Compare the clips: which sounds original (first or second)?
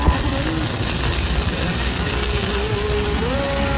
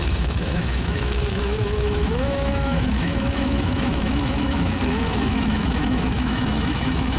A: first